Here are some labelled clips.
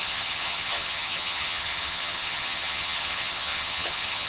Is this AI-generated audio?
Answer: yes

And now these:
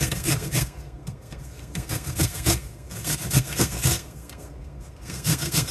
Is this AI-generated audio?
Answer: yes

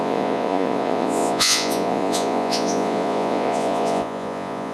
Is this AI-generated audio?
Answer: yes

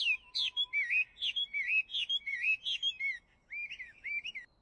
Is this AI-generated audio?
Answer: no